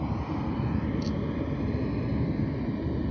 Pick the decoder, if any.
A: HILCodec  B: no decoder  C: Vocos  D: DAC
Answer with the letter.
B